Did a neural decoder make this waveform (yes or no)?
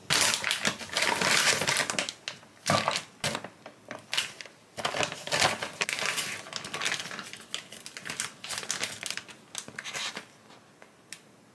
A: no